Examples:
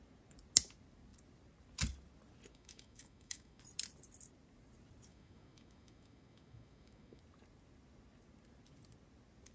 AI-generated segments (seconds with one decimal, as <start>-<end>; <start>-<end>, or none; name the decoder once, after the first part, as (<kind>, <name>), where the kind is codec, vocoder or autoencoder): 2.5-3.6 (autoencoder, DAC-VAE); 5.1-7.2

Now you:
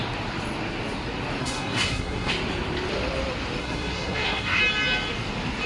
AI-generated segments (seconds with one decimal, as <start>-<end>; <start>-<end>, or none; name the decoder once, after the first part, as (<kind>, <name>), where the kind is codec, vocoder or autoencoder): 1.4-2.3 (codec, SNAC); 3.6-4.6

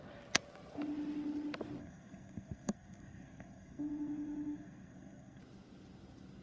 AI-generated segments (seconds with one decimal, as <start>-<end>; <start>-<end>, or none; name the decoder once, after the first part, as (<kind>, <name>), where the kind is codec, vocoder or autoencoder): 1.8-5.4 (codec, SNAC)

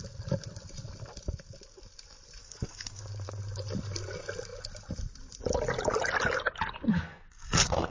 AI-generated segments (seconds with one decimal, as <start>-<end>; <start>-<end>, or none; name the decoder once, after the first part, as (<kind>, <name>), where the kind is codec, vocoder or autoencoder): 2.4-3.0 (codec, SNAC); 6.9-7.9